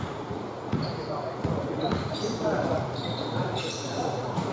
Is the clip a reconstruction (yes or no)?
yes